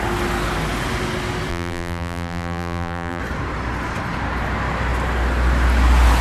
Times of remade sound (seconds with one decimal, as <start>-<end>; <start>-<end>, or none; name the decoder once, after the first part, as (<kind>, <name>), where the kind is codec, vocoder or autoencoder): 1.5-3.2 (vocoder, BigVGAN v2)